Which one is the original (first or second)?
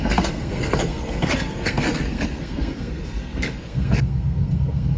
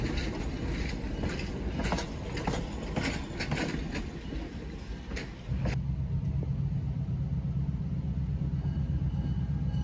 second